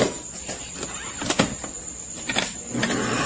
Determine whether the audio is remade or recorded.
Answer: recorded